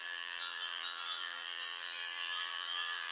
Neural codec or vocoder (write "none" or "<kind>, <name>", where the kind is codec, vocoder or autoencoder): vocoder, BigVGAN v2